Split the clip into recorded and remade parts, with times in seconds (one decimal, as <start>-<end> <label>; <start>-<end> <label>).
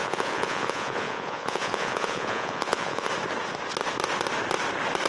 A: 0.0-3.1 remade; 3.1-5.1 recorded